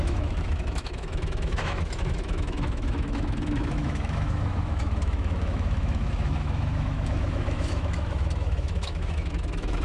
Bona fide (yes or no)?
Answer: no